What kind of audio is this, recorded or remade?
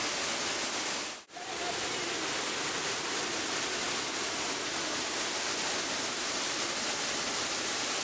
recorded